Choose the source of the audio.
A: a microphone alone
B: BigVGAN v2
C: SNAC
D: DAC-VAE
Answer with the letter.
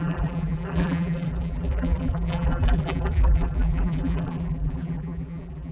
B